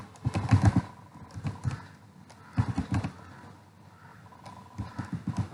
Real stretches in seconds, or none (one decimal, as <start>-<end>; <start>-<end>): 0.0-4.1; 5.0-5.5